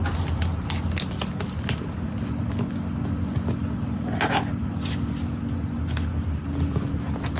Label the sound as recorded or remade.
recorded